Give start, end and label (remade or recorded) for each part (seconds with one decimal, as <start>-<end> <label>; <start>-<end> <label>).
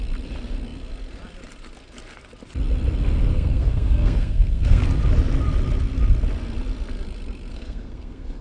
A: 0.0-3.3 recorded; 3.3-4.8 remade; 4.8-7.5 recorded; 7.5-8.4 remade